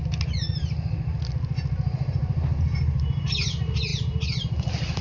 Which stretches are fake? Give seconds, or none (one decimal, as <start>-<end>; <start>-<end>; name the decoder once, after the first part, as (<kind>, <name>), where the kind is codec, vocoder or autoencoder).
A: none